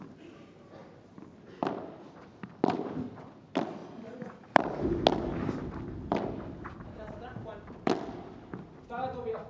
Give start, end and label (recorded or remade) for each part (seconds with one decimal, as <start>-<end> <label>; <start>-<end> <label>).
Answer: 0.0-9.5 recorded